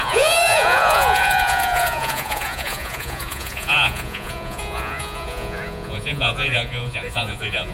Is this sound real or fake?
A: fake